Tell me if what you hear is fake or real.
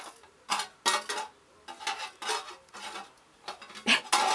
real